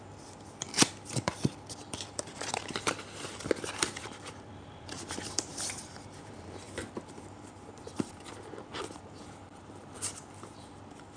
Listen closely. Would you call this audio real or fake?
fake